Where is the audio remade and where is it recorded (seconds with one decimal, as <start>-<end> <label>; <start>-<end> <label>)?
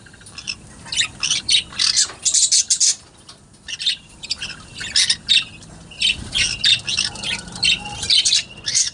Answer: 0.0-8.9 recorded